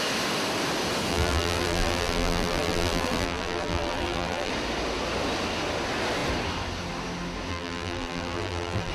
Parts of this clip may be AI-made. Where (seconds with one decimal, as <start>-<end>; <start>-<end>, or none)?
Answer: 1.1-4.5; 7.5-8.9